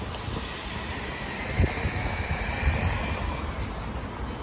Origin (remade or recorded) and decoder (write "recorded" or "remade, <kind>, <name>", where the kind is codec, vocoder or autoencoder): recorded